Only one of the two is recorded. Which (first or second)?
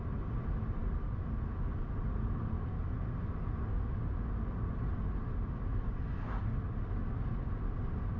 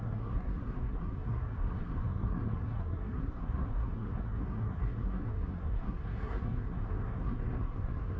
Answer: first